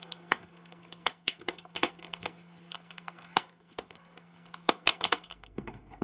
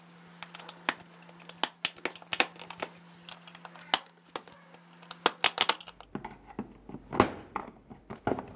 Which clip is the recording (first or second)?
second